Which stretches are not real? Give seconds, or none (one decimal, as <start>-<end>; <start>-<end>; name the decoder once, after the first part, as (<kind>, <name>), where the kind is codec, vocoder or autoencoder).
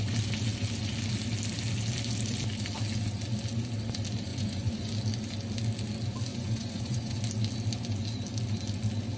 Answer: 4.3-4.9 (vocoder, Vocos); 6.3-7.2